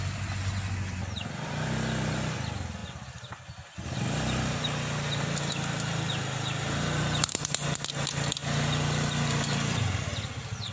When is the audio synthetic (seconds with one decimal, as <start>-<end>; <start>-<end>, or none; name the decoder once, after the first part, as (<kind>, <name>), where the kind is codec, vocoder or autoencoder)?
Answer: none